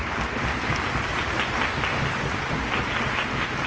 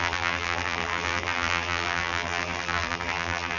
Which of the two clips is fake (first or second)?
second